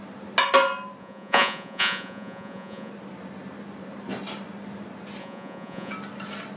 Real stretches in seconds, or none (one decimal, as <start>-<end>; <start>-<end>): 0.0-1.0; 2.9-5.2; 5.9-6.6